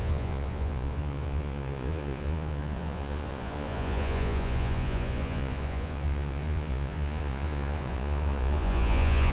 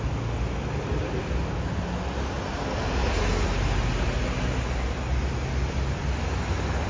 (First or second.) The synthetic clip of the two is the first